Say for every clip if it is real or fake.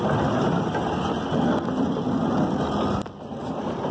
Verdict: real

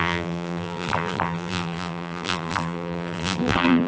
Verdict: fake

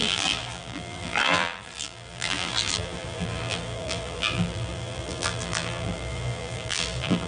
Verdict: fake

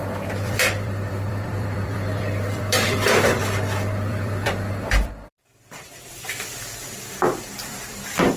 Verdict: fake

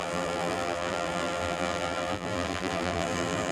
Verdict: fake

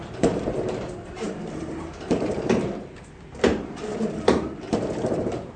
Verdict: fake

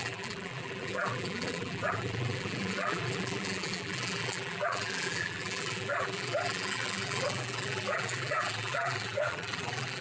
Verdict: fake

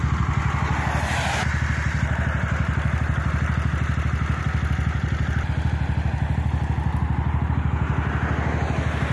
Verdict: real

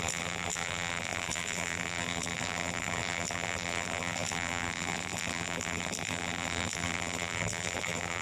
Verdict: fake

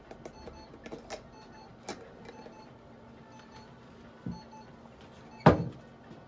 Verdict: real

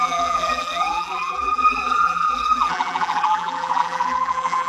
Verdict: fake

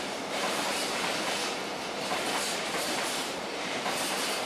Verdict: fake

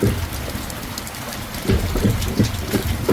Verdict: real